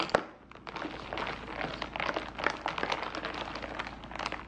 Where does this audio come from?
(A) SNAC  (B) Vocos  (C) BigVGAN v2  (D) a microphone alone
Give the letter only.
D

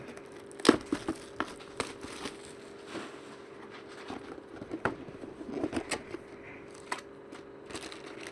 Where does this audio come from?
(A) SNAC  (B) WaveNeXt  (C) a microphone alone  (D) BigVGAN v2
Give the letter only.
C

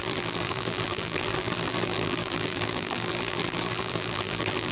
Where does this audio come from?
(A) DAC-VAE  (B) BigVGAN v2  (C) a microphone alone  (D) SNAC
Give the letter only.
B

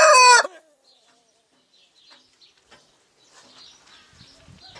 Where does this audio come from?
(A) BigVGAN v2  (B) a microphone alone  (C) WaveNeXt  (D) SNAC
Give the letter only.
B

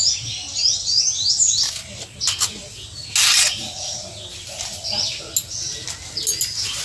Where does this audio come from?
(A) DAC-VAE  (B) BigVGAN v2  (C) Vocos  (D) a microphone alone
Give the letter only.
D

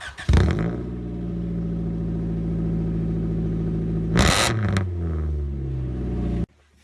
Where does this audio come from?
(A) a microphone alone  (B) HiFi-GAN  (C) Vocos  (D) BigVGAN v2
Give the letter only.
A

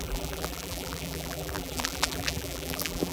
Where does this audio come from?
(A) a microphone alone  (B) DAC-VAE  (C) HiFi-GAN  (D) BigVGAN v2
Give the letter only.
D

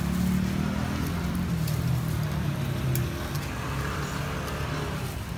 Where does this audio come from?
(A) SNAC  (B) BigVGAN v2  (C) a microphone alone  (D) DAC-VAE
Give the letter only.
C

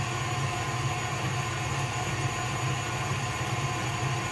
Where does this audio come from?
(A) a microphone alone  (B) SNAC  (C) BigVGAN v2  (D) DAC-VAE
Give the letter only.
A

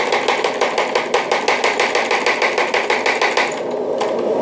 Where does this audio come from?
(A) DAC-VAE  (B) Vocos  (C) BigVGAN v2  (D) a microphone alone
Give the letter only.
D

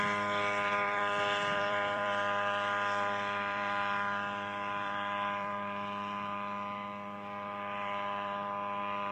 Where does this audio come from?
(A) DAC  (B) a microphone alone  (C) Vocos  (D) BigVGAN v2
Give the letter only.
D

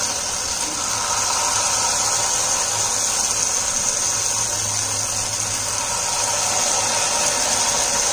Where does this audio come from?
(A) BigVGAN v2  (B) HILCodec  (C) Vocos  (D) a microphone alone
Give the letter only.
D